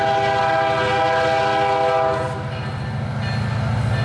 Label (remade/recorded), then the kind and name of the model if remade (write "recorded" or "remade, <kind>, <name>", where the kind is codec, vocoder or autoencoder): recorded